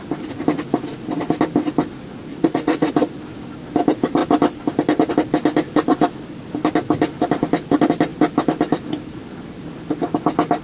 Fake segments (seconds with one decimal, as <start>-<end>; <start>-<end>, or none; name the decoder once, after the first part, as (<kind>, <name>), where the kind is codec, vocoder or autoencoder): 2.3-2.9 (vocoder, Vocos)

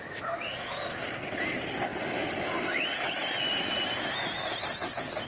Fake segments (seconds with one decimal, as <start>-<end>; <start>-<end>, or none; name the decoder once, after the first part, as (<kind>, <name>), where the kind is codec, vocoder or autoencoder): none

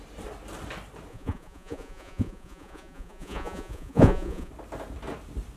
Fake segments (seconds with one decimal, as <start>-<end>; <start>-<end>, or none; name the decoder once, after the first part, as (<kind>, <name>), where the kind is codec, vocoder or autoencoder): 1.1-4.5 (vocoder, Vocos)

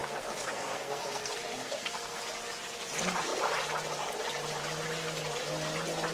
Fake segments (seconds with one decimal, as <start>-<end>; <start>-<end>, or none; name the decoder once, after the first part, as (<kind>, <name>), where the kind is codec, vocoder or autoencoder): 0.0-2.2 (codec, SNAC)

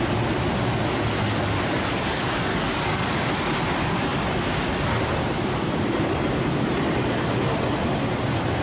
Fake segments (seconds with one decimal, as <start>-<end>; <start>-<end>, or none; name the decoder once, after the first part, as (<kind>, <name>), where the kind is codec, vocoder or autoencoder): 2.5-3.3 (codec, DAC)

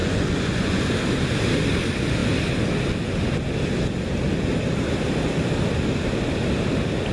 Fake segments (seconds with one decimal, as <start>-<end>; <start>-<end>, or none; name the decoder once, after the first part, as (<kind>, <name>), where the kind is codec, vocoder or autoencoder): 0.0-0.8 (vocoder, Vocos)